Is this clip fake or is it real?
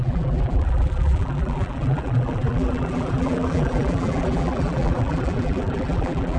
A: fake